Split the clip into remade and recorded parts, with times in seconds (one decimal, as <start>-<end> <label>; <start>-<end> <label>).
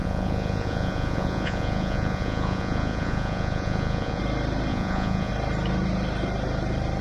0.0-4.2 remade; 4.2-4.7 recorded; 4.7-5.3 remade; 5.3-7.0 recorded